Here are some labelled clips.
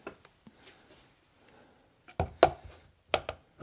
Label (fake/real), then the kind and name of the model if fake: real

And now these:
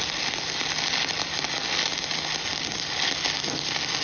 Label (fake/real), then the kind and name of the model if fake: real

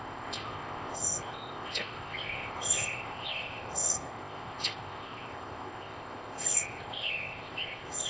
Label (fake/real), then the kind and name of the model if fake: fake, codec, ZipCodec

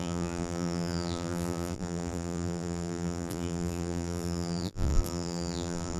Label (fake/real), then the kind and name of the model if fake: fake, vocoder, BigVGAN v2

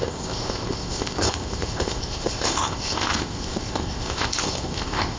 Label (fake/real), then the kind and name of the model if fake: fake, codec, ZipCodec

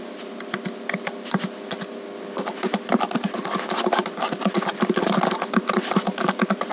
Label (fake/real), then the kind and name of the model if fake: real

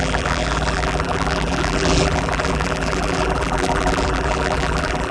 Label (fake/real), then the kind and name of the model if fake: fake, vocoder, BigVGAN v2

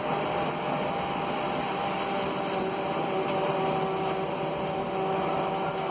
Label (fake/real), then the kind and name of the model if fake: real